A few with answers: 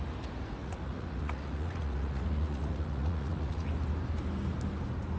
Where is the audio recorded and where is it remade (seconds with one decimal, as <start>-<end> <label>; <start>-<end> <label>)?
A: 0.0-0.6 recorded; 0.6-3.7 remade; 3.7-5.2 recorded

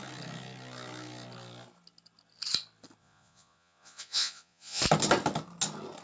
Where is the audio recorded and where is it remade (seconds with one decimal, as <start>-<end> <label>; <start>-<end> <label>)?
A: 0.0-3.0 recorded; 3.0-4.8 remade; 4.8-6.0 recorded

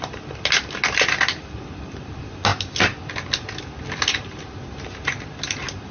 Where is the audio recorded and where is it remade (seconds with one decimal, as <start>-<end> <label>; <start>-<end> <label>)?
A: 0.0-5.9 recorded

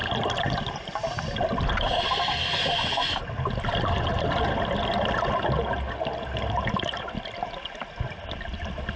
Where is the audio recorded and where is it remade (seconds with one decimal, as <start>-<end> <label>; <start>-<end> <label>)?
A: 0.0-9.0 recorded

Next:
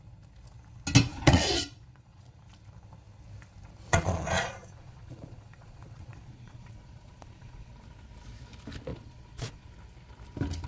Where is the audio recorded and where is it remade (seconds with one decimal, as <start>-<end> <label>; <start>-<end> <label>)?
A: 0.0-1.1 recorded; 1.1-2.4 remade; 2.4-3.9 recorded; 3.9-7.7 remade; 7.7-8.9 recorded; 8.9-9.7 remade; 9.7-10.7 recorded

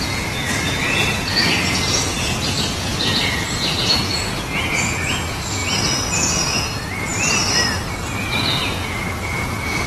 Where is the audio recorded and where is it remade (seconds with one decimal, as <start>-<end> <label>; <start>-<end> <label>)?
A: 0.0-7.1 remade; 7.1-8.2 recorded; 8.2-9.9 remade

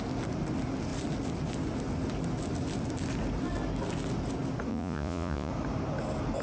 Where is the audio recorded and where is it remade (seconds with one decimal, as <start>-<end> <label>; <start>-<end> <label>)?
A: 0.0-4.7 recorded; 4.7-5.5 remade; 5.5-6.4 recorded

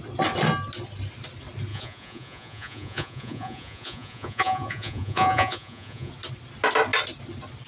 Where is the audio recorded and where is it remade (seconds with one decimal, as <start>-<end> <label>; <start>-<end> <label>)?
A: 0.0-1.7 recorded; 1.7-6.1 remade; 6.1-7.7 recorded